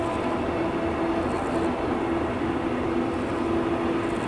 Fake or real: real